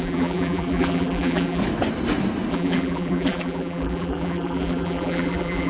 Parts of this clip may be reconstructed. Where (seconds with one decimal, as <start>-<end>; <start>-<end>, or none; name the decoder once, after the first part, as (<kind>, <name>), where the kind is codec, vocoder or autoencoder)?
0.0-1.6 (vocoder, BigVGAN v2); 2.5-5.7